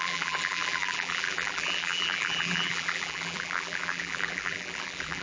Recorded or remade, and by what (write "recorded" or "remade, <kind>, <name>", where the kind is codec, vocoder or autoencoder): remade, vocoder, BigVGAN v2